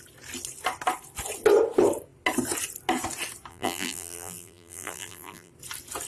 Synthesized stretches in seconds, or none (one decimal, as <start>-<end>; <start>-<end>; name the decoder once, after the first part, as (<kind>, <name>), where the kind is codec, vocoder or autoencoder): 3.5-5.5 (vocoder, BigVGAN v2)